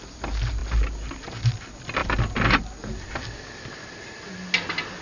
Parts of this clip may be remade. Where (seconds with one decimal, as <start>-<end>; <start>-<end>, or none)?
none